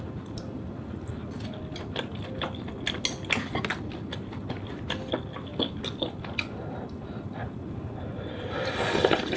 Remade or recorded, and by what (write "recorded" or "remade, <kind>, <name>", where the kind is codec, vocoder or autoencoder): recorded